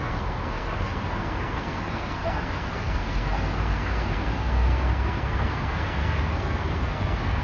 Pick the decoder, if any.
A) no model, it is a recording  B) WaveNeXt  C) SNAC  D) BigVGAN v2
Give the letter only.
C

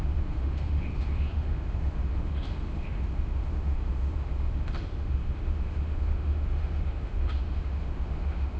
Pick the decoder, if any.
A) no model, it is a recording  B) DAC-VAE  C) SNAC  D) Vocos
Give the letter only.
B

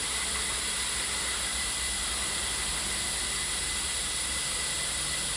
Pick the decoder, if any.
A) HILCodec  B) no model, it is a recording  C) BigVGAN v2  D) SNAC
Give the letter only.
B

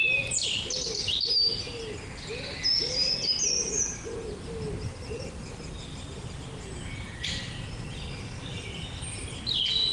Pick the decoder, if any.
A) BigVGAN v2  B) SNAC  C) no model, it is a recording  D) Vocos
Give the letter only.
C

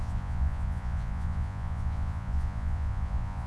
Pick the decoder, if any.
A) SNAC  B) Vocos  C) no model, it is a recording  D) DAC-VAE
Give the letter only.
B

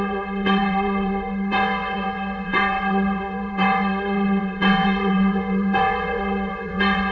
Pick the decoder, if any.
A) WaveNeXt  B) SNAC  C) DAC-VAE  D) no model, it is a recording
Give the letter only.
A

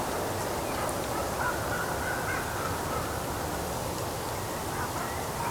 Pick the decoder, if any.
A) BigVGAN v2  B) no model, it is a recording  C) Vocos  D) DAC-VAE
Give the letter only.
B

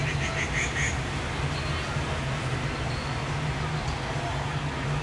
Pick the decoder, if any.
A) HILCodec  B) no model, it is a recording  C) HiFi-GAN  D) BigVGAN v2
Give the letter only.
B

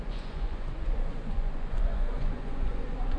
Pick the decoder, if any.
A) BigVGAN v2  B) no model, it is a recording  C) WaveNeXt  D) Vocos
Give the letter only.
D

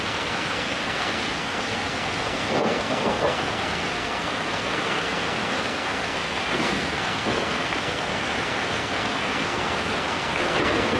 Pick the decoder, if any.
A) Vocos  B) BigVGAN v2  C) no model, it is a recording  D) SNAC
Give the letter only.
D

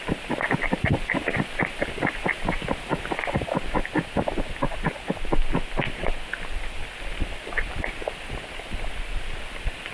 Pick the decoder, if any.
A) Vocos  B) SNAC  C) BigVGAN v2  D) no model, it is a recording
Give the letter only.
D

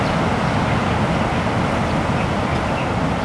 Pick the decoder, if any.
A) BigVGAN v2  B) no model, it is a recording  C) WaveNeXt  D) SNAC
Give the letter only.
B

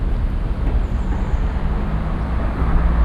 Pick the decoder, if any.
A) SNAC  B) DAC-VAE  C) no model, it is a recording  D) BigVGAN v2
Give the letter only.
C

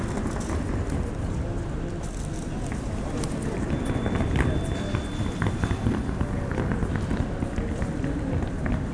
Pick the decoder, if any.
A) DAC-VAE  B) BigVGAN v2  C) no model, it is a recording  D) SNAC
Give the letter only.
C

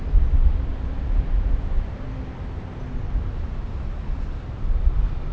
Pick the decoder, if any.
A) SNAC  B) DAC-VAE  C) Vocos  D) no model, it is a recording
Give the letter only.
D